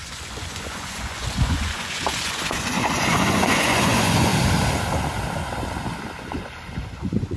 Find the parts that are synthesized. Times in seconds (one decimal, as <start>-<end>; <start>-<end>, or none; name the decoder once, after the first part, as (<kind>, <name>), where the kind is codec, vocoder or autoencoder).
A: 0.0-4.3 (vocoder, Vocos); 6.2-7.4

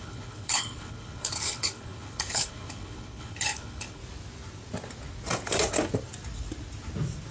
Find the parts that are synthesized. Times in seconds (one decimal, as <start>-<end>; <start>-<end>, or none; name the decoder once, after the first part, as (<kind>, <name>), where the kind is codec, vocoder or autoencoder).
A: 0.0-4.0 (codec, HILCodec)

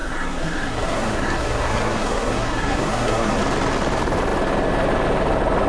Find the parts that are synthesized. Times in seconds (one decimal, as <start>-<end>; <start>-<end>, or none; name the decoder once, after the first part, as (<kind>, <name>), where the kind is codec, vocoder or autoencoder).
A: 0.0-3.4 (codec, SNAC)

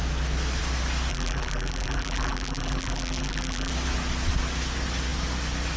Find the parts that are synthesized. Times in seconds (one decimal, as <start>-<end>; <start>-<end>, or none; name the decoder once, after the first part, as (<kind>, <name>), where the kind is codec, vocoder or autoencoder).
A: 1.1-3.7 (vocoder, BigVGAN v2)

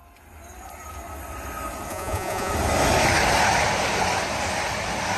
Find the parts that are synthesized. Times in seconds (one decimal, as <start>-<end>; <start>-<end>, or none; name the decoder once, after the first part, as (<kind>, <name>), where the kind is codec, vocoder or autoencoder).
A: 1.9-2.5 (vocoder, Vocos)

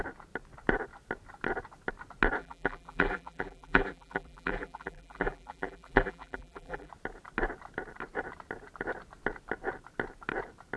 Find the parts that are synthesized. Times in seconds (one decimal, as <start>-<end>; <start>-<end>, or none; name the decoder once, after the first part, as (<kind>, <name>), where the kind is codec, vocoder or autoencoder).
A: 2.4-6.9 (vocoder, BigVGAN v2)

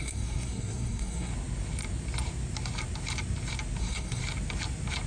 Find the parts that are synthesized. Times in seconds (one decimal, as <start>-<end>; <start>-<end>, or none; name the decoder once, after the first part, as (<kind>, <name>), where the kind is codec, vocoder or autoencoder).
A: 0.0-1.3 (codec, SNAC); 3.8-4.2